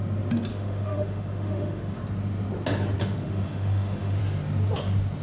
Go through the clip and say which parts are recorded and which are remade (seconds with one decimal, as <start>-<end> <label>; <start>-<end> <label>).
0.0-0.5 recorded; 0.5-2.0 remade; 2.0-3.0 recorded; 3.0-4.2 remade; 4.2-5.2 recorded